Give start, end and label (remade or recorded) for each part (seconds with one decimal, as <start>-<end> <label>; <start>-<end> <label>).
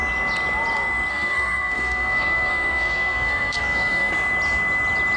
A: 0.0-1.1 recorded; 1.1-4.1 remade; 4.1-5.2 recorded